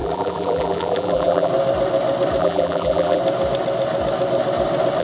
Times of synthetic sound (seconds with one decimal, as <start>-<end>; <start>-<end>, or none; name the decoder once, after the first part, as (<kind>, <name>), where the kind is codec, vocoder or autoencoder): 0.0-1.5 (vocoder, BigVGAN v2); 2.4-3.2